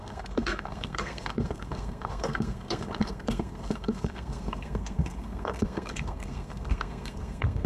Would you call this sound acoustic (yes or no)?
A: no